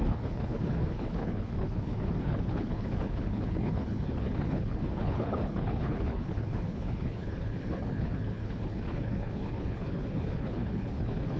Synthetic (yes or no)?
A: yes